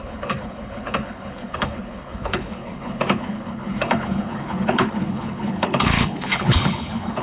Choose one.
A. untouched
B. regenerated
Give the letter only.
B